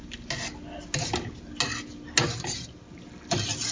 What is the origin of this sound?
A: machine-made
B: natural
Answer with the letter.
B